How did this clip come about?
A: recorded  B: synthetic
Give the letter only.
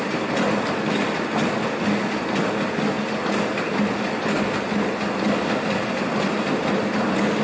A